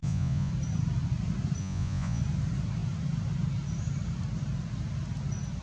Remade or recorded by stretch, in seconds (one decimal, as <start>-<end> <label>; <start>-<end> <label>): 0.0-0.5 remade; 0.5-1.6 recorded; 1.6-2.2 remade; 2.2-5.6 recorded